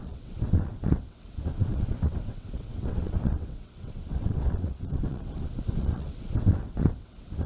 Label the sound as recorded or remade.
remade